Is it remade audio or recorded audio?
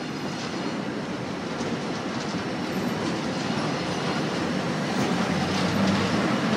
remade